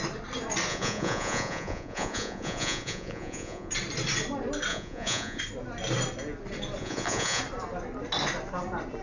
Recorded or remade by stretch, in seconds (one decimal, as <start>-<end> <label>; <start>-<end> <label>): 0.0-0.7 recorded; 0.7-3.7 remade; 3.7-4.7 recorded; 4.7-5.4 remade; 5.4-6.8 recorded; 6.8-7.4 remade; 7.4-9.0 recorded